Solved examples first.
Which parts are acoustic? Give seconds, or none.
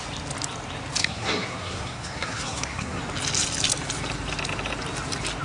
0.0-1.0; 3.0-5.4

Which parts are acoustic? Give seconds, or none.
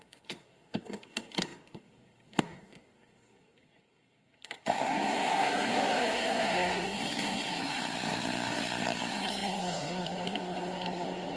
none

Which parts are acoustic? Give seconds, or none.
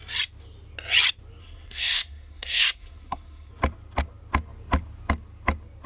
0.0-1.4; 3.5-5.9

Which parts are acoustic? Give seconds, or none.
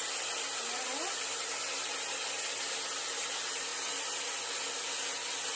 0.0-5.6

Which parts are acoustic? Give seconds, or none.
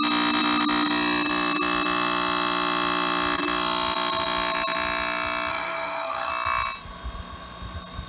0.0-5.5; 6.3-8.1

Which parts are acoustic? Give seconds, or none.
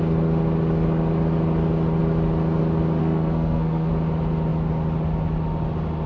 0.0-3.0; 3.9-6.1